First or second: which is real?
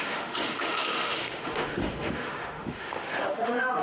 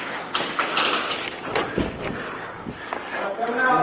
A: second